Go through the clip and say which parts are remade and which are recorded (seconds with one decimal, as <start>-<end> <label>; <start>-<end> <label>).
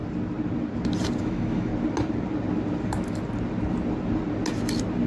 0.0-1.2 recorded; 1.2-1.7 remade; 1.7-5.1 recorded